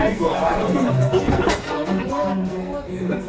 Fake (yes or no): yes